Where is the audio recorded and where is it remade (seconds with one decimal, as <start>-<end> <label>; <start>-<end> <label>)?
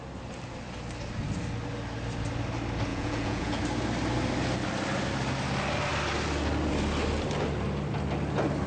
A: 0.0-2.9 recorded; 2.9-3.6 remade; 3.6-8.7 recorded